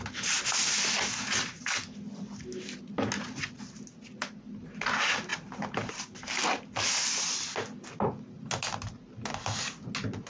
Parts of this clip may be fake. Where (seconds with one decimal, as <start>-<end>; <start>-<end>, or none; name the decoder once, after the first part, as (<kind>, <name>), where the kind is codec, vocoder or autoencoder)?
none